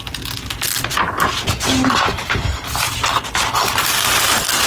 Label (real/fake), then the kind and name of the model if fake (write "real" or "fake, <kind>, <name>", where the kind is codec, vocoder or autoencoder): real